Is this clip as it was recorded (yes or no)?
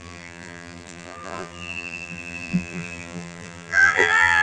no